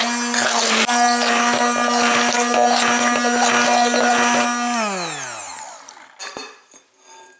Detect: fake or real real